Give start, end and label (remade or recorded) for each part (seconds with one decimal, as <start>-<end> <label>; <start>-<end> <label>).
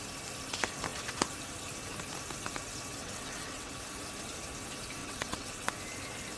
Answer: 0.0-3.0 recorded; 3.0-3.7 remade; 3.7-5.0 recorded; 5.0-5.7 remade; 5.7-6.4 recorded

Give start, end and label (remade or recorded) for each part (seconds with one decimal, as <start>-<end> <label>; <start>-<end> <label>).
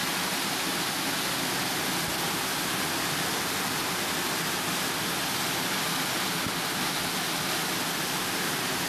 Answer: 0.0-8.9 recorded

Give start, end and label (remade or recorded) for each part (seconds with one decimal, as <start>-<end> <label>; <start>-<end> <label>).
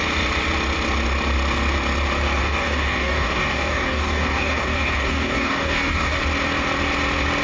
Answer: 0.0-2.4 recorded; 2.4-6.2 remade; 6.2-7.4 recorded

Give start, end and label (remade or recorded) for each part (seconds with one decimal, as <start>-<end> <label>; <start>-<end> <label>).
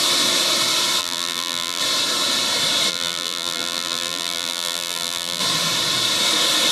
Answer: 0.0-1.0 recorded; 1.0-1.8 remade; 1.8-2.9 recorded; 2.9-5.4 remade; 5.4-6.7 recorded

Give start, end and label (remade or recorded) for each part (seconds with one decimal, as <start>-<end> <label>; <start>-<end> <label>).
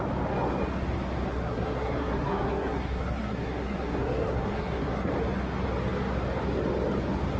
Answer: 0.0-1.3 recorded; 1.3-5.1 remade; 5.1-7.4 recorded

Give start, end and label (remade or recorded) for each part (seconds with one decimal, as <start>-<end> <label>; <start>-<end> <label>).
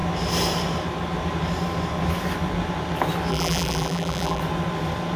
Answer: 0.0-3.3 recorded; 3.3-4.4 remade; 4.4-5.2 recorded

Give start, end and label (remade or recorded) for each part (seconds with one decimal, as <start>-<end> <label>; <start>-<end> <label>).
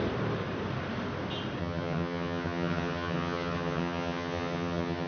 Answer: 0.0-1.6 recorded; 1.6-5.1 remade